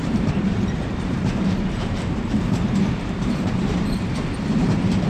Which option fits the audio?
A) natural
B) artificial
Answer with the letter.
B